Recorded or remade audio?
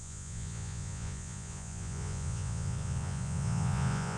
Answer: remade